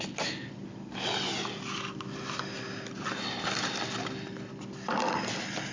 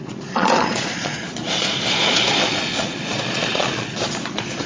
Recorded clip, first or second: first